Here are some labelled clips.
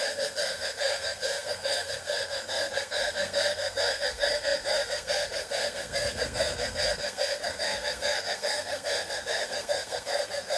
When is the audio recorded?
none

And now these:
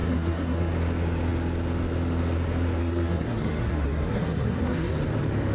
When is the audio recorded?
0.7-2.8; 4.9-5.5

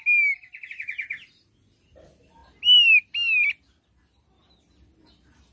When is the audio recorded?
0.0-5.5

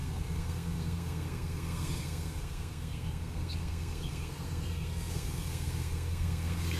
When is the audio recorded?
none